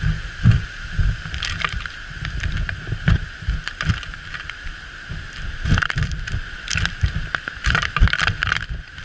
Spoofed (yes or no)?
yes